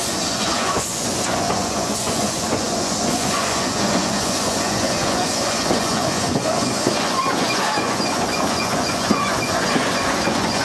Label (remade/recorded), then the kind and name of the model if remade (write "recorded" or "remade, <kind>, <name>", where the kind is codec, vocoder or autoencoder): remade, vocoder, Vocos